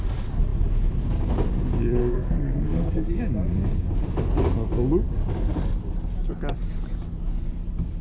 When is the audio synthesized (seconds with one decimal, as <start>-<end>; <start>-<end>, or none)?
2.0-3.2